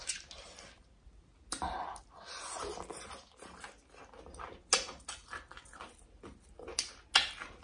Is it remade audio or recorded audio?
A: recorded